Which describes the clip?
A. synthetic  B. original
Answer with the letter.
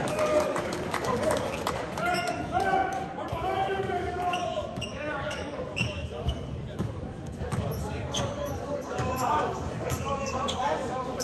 A